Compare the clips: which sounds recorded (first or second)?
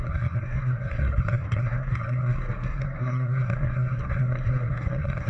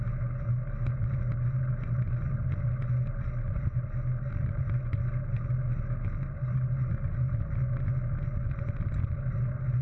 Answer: second